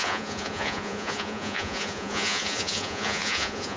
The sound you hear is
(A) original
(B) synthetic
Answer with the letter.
B